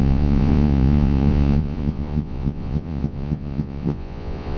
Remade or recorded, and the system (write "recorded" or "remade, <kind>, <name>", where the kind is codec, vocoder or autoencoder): remade, vocoder, Vocos